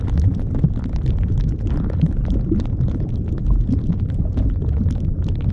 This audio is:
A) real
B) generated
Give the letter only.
A